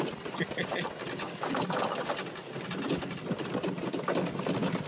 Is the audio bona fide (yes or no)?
yes